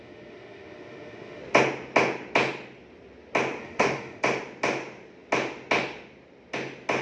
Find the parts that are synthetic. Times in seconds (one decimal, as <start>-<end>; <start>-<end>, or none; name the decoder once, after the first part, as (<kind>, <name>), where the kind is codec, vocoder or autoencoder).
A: 0.0-1.4 (autoencoder, DAC-VAE); 3.6-4.2

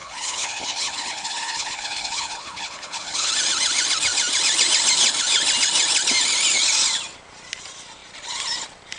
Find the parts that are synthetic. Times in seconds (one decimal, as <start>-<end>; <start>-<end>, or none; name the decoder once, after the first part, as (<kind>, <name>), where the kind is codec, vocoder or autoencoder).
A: 0.0-3.3 (codec, HILCodec)